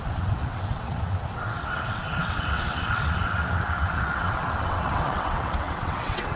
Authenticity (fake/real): fake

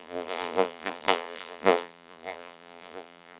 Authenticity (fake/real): fake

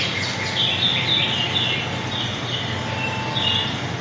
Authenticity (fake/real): real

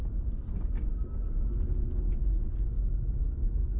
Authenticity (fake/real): real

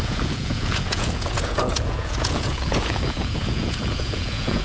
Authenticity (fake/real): fake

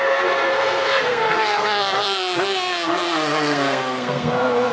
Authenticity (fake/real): fake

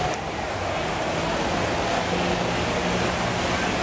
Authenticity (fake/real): real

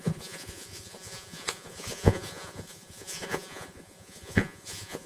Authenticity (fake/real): fake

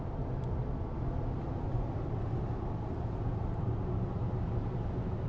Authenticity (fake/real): real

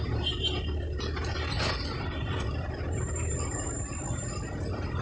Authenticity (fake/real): fake